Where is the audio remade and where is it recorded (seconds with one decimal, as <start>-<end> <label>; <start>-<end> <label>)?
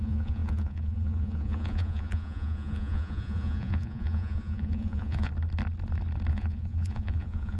0.0-5.3 remade; 5.3-6.3 recorded; 6.3-7.6 remade